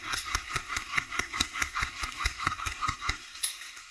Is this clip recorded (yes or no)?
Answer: no